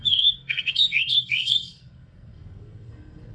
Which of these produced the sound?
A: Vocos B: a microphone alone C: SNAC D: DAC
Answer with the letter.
C